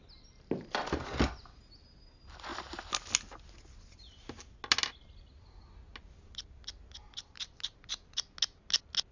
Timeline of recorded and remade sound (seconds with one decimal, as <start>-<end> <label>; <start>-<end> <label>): 0.0-9.1 recorded